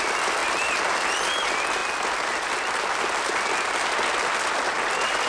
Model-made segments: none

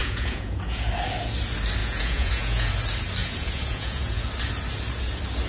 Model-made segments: 0.0-0.9 (vocoder, Vocos); 1.8-2.7; 3.2-4.2

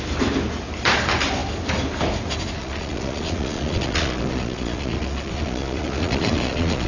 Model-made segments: 2.6-6.9 (vocoder, Vocos)

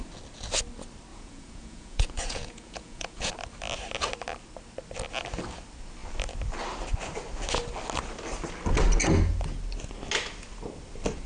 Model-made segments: 1.1-3.3 (vocoder, Vocos)

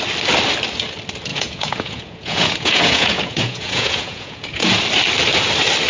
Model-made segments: 1.3-4.8 (vocoder, Vocos)

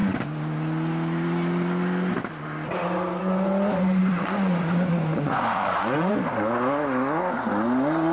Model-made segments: 4.0-6.1 (vocoder, Vocos)

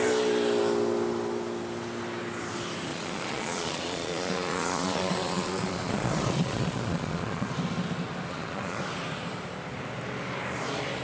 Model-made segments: 2.9-7.5 (vocoder, Vocos); 8.3-8.8

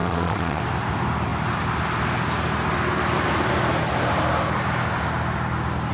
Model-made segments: 0.0-0.6 (vocoder, Vocos)